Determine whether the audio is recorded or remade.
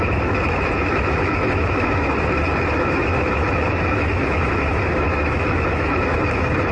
remade